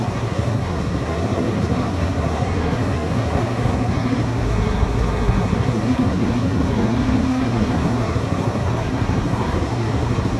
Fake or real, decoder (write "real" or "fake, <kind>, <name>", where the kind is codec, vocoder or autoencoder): fake, codec, SNAC